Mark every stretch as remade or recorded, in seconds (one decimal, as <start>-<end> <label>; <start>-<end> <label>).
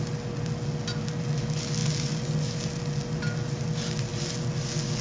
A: 0.0-5.0 recorded